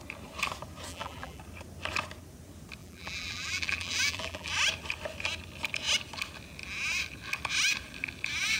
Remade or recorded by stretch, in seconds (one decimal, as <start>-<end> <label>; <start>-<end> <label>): 0.0-0.9 recorded; 0.9-1.4 remade; 1.4-2.8 recorded; 2.8-4.5 remade; 4.5-8.6 recorded